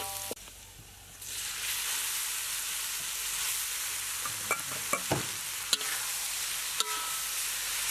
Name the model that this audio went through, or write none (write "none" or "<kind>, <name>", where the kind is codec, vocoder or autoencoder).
none